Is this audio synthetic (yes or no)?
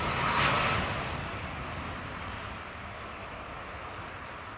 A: no